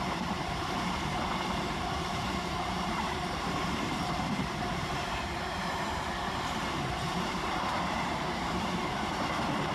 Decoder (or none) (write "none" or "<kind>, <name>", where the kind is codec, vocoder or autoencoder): vocoder, BigVGAN v2